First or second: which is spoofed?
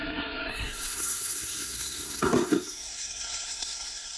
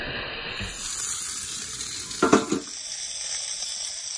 first